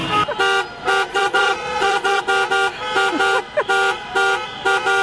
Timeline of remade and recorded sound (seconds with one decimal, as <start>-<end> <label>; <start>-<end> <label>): 0.0-1.1 recorded; 1.1-2.2 remade; 2.2-5.0 recorded